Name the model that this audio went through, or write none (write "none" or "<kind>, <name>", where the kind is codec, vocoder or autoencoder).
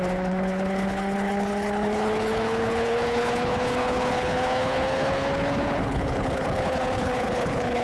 codec, HILCodec